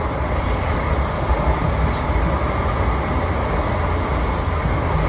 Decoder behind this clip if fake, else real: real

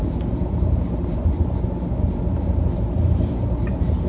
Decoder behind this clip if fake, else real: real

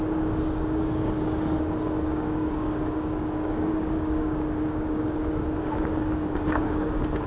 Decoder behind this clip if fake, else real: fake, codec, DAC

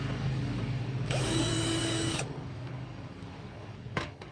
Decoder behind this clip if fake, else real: fake, codec, DAC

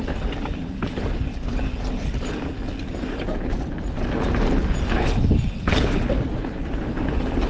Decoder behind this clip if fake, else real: real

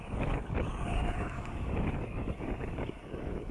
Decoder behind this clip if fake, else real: fake, codec, DAC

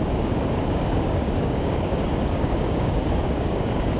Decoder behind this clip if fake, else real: fake, codec, DAC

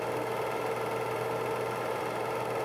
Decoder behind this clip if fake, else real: real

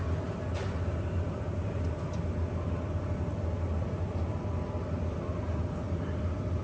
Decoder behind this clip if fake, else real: real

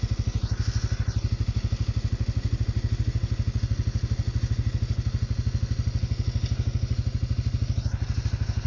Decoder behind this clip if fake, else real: real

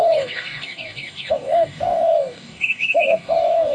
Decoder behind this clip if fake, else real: fake, codec, DAC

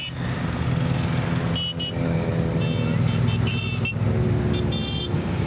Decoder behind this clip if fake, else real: real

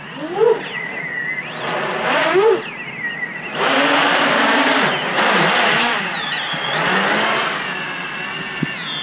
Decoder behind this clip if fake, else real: real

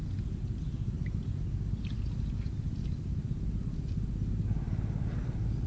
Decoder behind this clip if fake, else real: real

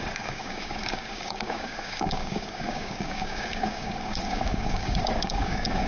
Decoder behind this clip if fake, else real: fake, codec, DAC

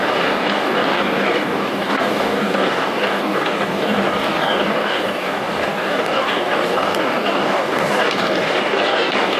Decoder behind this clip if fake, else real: fake, codec, DAC